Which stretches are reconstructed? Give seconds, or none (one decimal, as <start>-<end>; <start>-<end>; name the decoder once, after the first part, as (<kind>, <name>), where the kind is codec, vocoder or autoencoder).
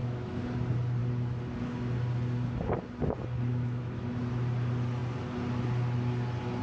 0.0-0.5 (autoencoder, DAC-VAE); 3.5-4.1